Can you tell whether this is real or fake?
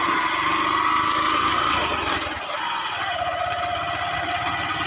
real